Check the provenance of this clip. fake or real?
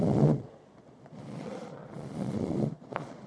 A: fake